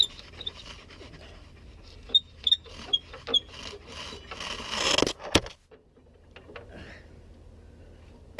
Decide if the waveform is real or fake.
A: real